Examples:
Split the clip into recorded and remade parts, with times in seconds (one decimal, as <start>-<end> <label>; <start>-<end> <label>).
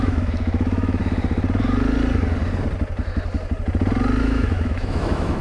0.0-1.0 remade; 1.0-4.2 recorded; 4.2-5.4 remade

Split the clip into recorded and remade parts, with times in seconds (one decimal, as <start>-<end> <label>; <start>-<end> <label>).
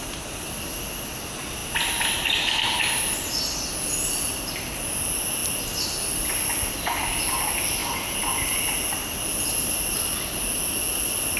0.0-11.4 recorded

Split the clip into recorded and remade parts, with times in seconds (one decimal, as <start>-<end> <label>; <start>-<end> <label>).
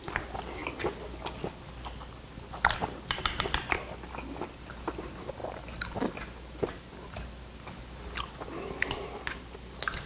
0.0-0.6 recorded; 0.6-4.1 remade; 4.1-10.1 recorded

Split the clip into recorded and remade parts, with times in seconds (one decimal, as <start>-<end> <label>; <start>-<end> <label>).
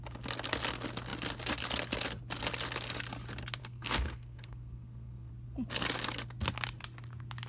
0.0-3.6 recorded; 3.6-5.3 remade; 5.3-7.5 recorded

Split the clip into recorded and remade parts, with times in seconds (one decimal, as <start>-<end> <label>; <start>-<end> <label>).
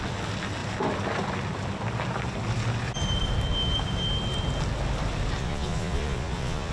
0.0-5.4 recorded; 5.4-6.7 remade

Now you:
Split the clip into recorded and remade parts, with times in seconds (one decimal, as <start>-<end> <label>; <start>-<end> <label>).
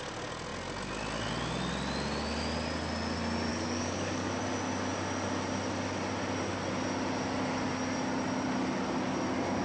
0.0-3.5 recorded; 3.5-4.4 remade; 4.4-9.6 recorded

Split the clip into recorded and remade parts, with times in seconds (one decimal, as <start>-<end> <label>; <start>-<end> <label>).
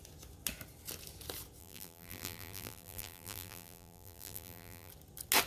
0.0-1.6 recorded; 1.6-4.9 remade; 4.9-5.5 recorded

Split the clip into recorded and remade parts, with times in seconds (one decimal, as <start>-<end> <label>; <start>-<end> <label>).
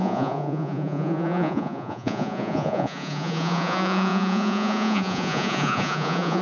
0.0-6.4 remade